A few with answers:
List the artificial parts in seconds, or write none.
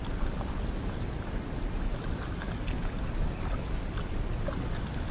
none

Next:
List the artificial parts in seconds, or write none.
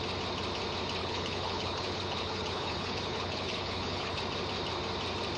1.0-4.2 (codec, HILCodec)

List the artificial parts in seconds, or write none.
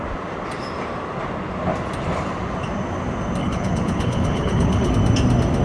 3.4-4.9 (codec, HILCodec)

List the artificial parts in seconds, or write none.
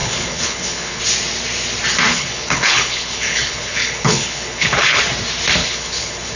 0.0-1.0 (codec, HILCodec); 2.1-5.0; 5.6-6.4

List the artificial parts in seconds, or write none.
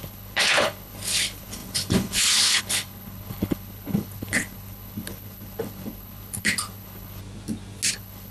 0.0-7.2 (codec, HILCodec); 7.9-8.3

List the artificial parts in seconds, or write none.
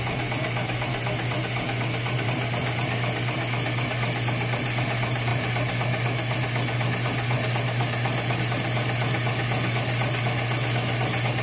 none